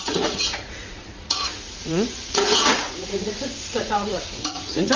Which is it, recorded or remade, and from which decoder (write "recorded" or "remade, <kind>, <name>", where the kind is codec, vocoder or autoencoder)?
remade, vocoder, Vocos